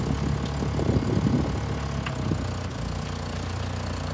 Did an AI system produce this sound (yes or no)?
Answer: no